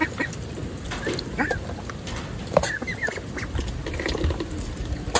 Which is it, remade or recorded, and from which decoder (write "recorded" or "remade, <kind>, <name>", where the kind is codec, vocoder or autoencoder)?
recorded